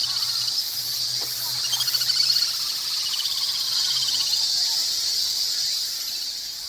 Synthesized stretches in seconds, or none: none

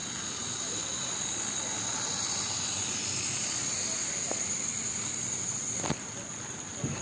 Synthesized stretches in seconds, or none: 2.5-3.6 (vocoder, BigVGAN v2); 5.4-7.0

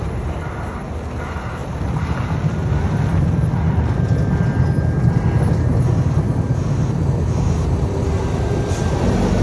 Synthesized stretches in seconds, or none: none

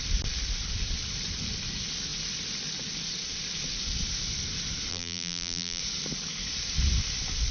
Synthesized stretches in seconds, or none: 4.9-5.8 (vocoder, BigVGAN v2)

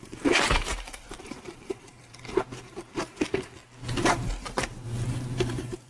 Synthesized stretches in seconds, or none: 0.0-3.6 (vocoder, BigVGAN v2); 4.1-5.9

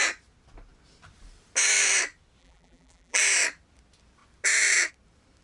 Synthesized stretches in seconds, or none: 2.4-3.2 (vocoder, BigVGAN v2)

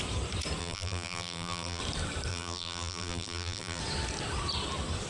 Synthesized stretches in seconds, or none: 0.6-1.8 (vocoder, BigVGAN v2); 2.3-3.8

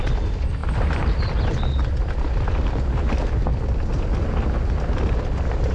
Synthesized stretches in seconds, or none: 0.6-1.4 (vocoder, BigVGAN v2)